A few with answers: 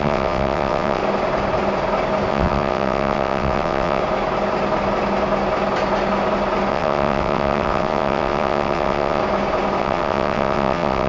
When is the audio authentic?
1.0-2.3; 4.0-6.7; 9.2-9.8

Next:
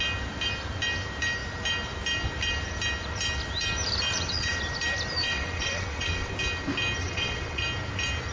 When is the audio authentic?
0.0-4.1; 4.6-5.2; 6.3-7.0; 7.6-8.3

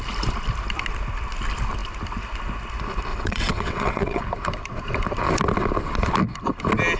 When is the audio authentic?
0.0-3.1; 4.2-7.0

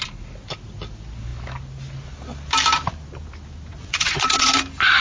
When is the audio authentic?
0.0-3.7; 4.5-5.0

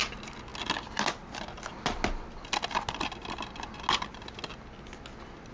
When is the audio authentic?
0.0-5.5